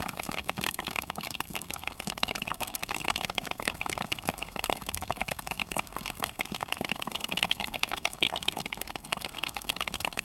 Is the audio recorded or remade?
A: remade